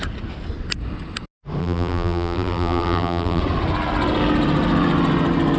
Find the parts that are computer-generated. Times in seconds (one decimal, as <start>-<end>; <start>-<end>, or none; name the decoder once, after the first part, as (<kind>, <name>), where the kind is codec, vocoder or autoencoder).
1.6-3.4 (vocoder, BigVGAN v2)